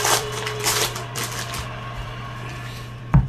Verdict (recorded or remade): remade